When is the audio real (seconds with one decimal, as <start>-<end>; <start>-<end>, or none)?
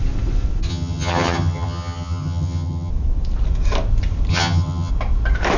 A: 0.0-0.7; 2.9-4.3; 4.9-5.6